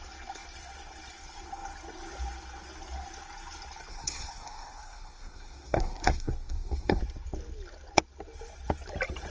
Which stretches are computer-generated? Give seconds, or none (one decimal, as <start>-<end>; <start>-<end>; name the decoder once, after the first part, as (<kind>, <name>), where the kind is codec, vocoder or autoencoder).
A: 3.9-7.0 (codec, SNAC)